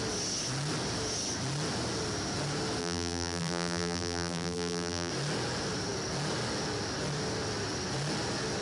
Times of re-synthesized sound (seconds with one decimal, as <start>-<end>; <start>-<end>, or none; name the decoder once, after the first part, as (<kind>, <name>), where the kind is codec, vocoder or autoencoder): 2.8-5.1 (vocoder, BigVGAN v2)